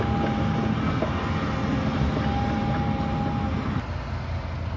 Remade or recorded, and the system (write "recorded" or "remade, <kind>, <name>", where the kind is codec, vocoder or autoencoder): recorded